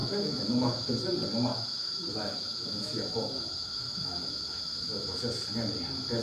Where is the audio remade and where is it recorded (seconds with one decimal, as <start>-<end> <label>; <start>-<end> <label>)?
0.0-0.9 remade; 0.9-1.5 recorded; 1.5-5.2 remade; 5.2-6.2 recorded